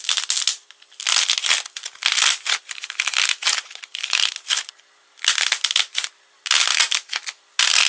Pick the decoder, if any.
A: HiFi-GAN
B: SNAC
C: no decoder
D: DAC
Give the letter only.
C